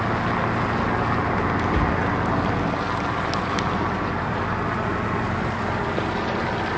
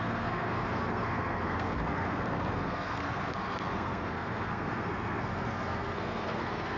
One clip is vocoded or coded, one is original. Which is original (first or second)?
first